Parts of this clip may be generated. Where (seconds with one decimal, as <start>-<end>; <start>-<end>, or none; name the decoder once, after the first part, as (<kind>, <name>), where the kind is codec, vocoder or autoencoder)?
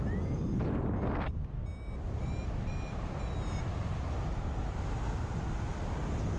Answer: none